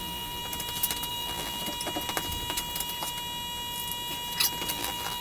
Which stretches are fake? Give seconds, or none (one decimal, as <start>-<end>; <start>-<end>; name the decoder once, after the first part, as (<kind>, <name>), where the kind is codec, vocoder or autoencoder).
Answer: 0.0-0.4 (vocoder, BigVGAN v2); 1.1-1.6; 4.7-5.2